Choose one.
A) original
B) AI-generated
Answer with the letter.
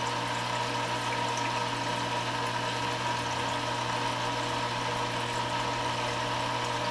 A